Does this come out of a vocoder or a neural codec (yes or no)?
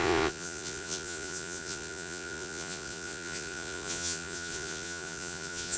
yes